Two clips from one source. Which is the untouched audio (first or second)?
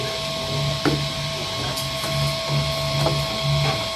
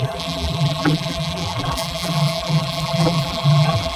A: first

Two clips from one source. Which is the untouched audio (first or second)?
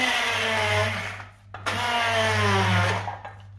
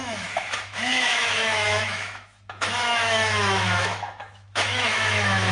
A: first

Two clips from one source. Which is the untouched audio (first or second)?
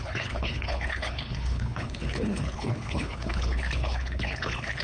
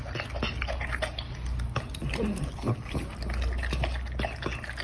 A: second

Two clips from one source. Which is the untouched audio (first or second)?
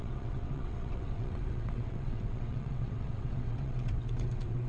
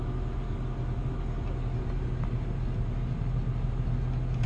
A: second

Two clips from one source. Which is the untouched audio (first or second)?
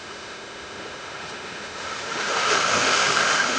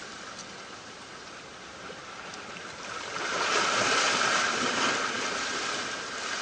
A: second